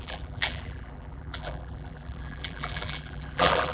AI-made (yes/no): yes